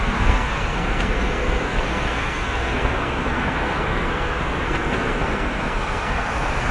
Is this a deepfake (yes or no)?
yes